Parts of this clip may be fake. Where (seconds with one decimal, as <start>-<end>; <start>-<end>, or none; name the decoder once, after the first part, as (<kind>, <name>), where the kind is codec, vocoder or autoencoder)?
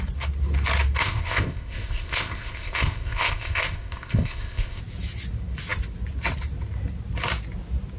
1.0-4.8 (codec, ZipCodec)